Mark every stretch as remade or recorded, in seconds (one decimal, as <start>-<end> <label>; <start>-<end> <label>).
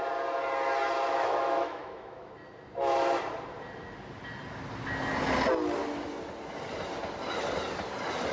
0.0-1.1 recorded; 1.1-2.3 remade; 2.3-8.3 recorded